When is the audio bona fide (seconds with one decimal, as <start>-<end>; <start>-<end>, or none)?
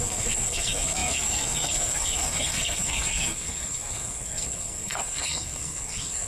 none